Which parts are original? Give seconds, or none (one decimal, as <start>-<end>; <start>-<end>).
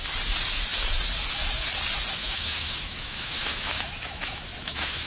0.0-2.2